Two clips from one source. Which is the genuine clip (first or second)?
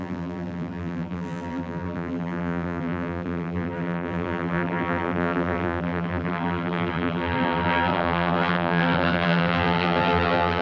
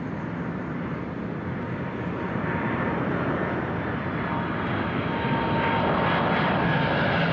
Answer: second